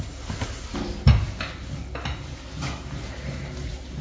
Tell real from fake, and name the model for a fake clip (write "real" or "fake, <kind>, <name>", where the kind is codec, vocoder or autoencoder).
real